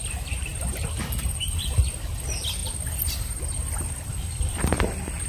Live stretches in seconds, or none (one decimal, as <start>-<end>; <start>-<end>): 0.0-2.6; 4.7-5.3